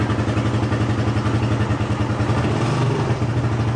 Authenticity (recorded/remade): recorded